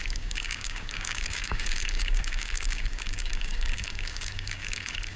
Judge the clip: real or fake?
fake